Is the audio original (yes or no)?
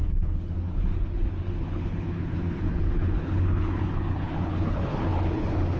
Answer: no